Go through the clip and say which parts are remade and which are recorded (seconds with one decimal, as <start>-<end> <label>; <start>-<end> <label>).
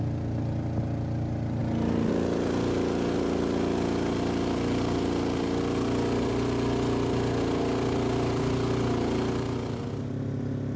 0.0-10.8 recorded